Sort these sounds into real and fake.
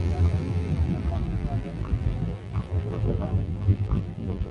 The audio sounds fake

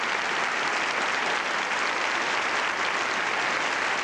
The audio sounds real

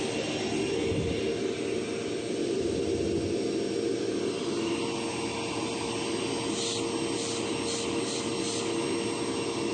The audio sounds real